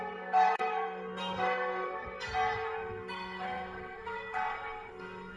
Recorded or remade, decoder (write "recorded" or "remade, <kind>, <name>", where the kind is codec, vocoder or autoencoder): remade, codec, SNAC